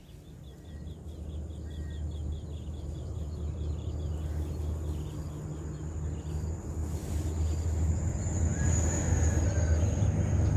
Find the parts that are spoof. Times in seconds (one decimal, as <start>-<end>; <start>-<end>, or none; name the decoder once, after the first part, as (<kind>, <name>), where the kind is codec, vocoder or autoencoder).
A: none